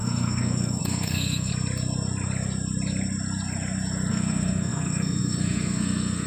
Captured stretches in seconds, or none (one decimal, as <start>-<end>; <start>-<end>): 1.5-4.1